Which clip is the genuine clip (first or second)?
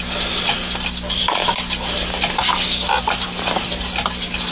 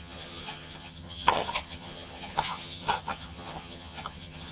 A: first